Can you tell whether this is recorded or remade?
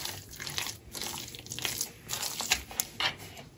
recorded